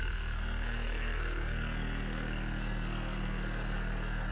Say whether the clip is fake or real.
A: fake